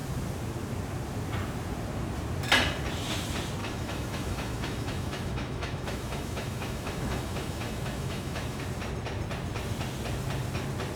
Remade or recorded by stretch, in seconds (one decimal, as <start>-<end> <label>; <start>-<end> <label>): 0.0-3.6 recorded; 3.6-8.6 remade; 8.6-11.0 recorded